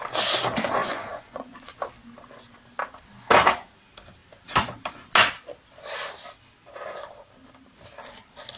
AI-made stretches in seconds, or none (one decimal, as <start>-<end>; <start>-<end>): 0.8-1.7